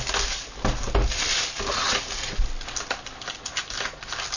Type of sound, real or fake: real